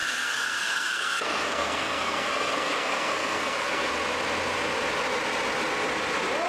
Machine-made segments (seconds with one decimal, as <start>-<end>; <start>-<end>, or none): 0.0-3.9